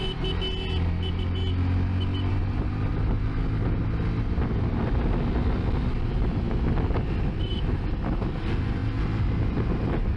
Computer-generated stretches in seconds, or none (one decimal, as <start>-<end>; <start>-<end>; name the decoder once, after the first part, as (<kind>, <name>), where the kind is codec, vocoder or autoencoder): 2.3-2.9 (vocoder, BigVGAN v2)